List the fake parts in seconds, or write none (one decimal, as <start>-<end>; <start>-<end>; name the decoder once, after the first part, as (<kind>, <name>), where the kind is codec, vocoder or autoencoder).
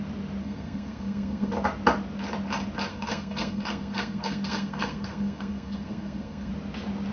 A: 0.4-1.5 (codec, SNAC); 2.9-6.5